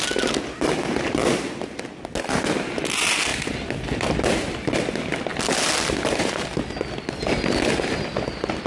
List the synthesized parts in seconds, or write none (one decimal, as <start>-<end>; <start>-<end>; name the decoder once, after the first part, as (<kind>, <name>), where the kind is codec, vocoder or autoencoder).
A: none